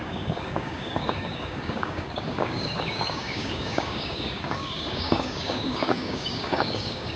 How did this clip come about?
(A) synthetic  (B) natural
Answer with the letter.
A